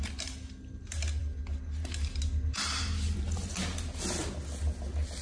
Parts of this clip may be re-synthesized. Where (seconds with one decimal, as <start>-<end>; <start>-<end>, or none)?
none